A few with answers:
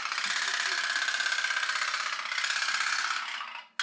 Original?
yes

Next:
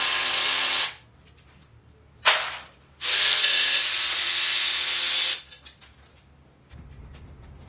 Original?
yes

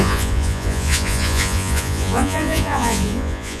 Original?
no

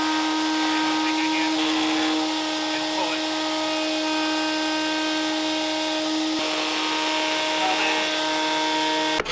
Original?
yes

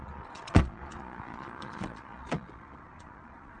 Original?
no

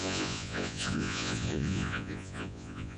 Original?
no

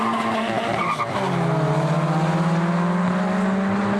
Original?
yes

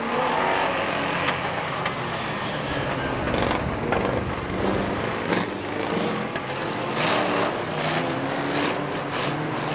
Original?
yes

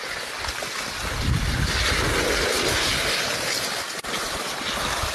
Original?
yes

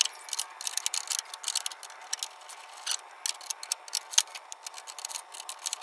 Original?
yes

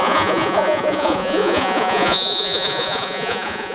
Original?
no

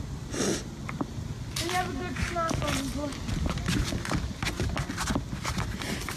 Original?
yes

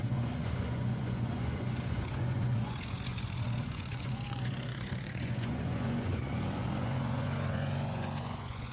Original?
no